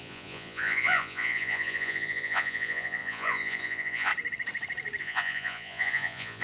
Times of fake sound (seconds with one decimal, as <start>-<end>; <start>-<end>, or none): 0.0-4.1; 5.0-6.4